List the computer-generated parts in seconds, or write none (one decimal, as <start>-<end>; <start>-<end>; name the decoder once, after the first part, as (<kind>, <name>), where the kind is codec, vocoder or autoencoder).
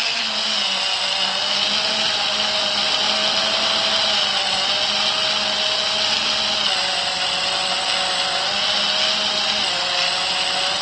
none